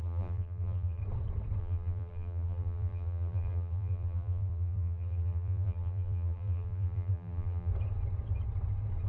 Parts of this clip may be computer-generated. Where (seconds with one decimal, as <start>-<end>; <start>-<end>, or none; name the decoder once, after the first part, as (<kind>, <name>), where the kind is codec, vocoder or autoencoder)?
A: 0.0-1.0 (vocoder, BigVGAN v2); 1.6-7.7